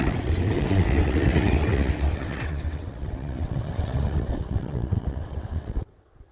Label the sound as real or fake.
fake